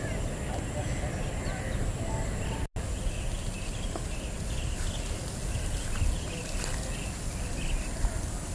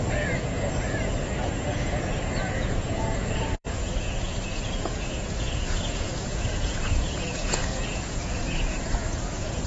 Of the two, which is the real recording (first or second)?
first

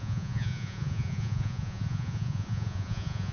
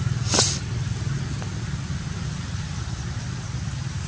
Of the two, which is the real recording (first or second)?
second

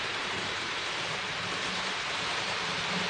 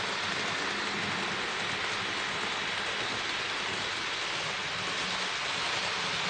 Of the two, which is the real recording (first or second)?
second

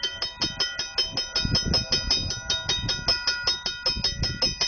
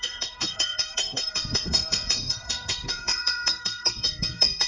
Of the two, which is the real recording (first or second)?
first